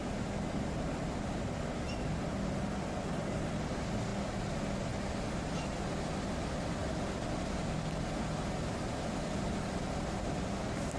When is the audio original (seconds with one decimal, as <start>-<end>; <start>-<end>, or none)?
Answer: 0.0-11.0